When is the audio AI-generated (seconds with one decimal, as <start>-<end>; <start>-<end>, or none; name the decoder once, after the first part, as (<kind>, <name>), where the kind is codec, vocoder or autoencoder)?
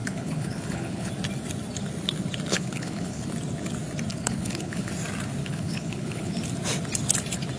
0.0-1.1 (codec, HILCodec); 2.5-3.3; 4.1-4.9; 5.4-6.4